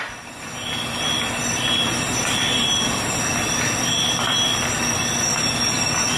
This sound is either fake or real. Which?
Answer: real